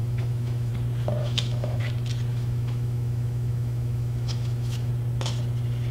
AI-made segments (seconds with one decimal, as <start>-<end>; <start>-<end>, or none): 0.0-0.7; 1.2-1.8; 2.3-4.9